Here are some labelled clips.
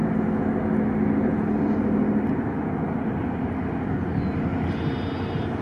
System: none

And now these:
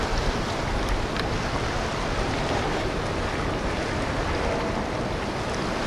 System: none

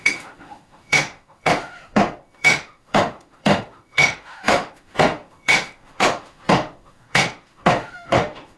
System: autoencoder, DAC-VAE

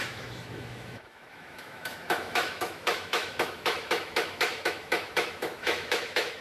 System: autoencoder, DAC-VAE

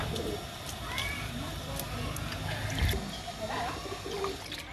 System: none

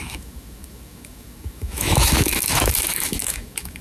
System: autoencoder, DAC-VAE